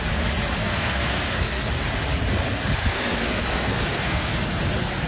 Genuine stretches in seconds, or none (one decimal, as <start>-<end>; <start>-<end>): 0.0-0.6; 1.7-2.8; 4.3-5.1